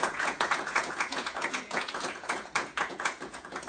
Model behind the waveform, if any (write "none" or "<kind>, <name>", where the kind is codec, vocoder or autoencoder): vocoder, Vocos